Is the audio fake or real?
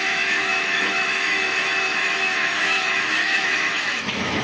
fake